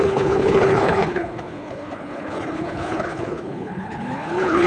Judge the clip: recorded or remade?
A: remade